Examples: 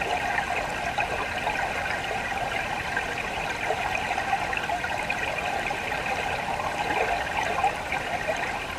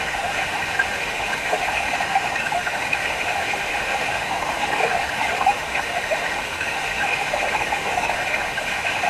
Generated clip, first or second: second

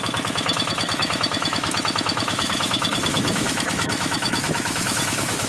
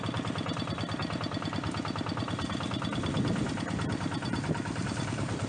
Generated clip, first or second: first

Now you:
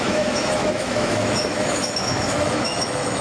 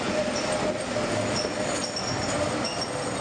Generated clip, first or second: first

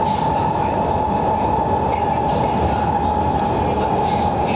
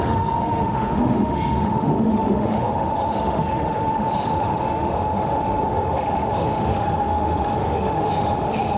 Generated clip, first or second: second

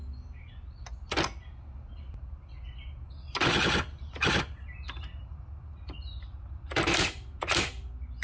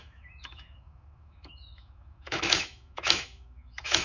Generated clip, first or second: second